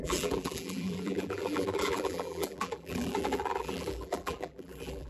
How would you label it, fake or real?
fake